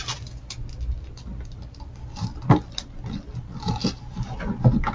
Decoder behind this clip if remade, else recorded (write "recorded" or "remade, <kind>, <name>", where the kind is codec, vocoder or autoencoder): remade, vocoder, BigVGAN v2